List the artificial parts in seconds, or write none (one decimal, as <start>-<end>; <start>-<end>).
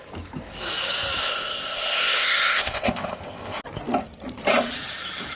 1.2-3.6